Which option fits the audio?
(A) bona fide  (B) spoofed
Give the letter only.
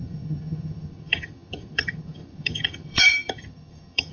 B